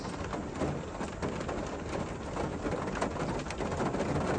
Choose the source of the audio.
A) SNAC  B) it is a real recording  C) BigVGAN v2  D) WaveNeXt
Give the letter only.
B